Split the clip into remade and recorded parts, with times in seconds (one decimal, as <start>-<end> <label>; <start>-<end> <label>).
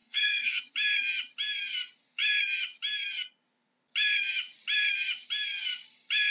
0.0-0.6 remade; 0.6-6.3 recorded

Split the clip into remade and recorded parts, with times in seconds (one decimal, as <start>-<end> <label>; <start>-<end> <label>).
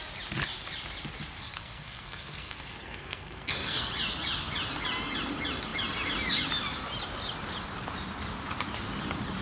0.0-1.4 recorded; 1.4-3.9 remade; 3.9-9.4 recorded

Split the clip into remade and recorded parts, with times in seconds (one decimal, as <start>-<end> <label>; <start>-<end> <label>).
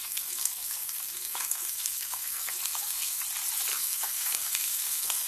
0.0-3.2 remade; 3.2-3.7 recorded; 3.7-5.3 remade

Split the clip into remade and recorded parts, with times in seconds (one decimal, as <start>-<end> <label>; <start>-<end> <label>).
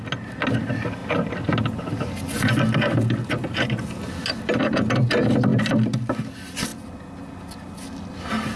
0.0-8.6 recorded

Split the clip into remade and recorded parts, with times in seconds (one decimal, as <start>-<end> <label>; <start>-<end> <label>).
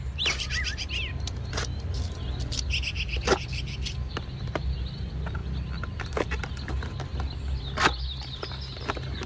0.0-9.3 recorded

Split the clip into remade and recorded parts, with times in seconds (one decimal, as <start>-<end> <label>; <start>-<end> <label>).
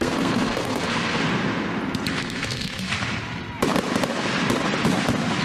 0.0-1.2 remade; 1.2-2.1 recorded; 2.1-2.9 remade; 2.9-5.4 recorded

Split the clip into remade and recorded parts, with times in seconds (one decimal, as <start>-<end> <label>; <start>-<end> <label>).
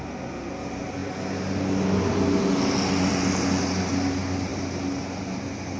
0.0-5.8 recorded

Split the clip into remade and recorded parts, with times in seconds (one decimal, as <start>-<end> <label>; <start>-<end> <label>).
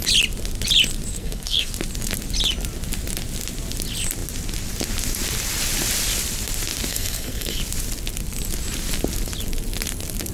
0.0-1.1 recorded; 1.1-1.7 remade; 1.7-6.9 recorded; 6.9-7.6 remade; 7.6-10.3 recorded